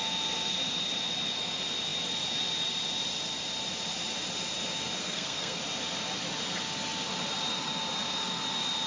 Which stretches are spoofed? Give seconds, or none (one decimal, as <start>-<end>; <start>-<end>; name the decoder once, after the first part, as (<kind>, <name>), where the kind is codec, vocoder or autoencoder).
5.0-5.6 (codec, SNAC)